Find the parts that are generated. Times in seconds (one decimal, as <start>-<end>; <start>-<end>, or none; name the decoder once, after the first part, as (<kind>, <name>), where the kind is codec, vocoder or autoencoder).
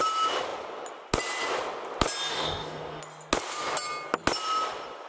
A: 2.3-3.0 (codec, DAC)